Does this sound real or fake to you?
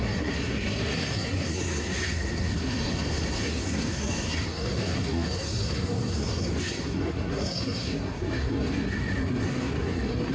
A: fake